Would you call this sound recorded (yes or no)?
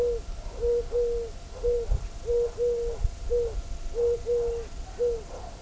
yes